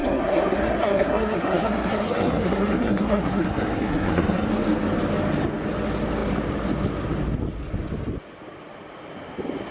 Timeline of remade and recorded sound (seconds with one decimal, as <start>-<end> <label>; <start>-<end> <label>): 0.0-4.5 remade; 4.5-9.7 recorded